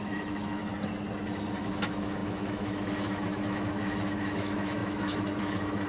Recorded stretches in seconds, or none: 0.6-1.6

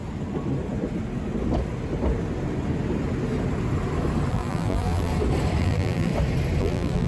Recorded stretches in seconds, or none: 0.0-4.3; 5.1-5.6; 6.1-6.6

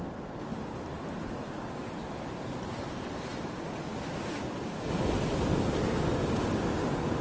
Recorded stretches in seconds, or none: 0.0-7.2

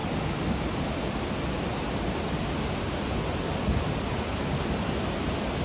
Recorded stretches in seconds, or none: 0.0-5.6

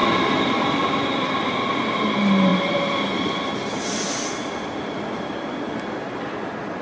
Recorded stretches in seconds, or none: 0.0-6.8

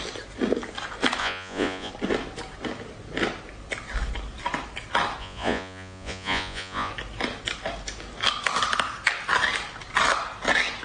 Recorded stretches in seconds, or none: 0.0-1.2; 1.9-5.2; 6.9-10.8

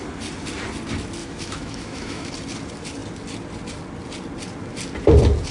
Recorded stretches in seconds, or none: 0.0-1.2; 2.3-5.5

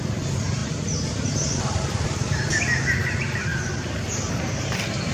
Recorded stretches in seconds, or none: 0.0-0.6; 2.6-3.5; 4.6-5.1